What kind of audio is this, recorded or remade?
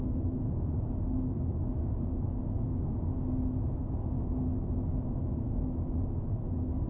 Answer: remade